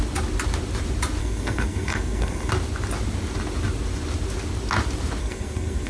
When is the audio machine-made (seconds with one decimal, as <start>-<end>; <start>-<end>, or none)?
1.2-2.5; 5.2-5.9